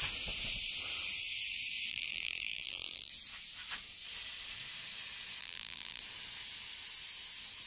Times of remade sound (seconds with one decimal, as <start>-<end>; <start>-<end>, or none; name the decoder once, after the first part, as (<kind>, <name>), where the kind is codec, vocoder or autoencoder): 1.9-3.1 (vocoder, BigVGAN v2); 5.4-6.0

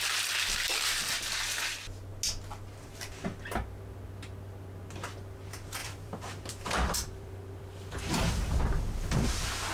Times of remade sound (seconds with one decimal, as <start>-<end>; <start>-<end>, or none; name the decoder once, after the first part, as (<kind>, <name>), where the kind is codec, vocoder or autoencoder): 5.8-8.3 (vocoder, BigVGAN v2)